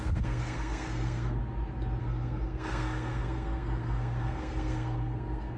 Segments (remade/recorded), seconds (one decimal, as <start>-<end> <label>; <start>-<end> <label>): 0.0-1.4 remade; 1.4-2.0 recorded; 2.0-5.6 remade